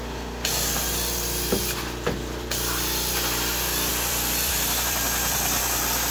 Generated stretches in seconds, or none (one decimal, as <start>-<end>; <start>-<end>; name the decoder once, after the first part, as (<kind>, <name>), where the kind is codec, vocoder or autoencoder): 3.9-5.6 (vocoder, BigVGAN v2)